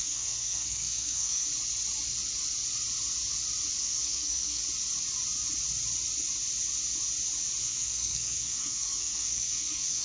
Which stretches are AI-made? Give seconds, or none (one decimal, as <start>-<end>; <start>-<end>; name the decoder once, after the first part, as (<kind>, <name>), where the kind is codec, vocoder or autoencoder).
0.0-1.5 (codec, SNAC); 3.8-4.6; 7.6-10.0